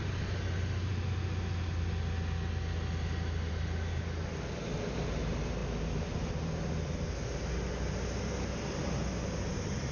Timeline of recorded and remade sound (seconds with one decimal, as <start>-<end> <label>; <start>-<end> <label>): 0.0-9.9 recorded